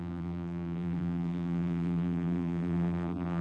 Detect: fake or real fake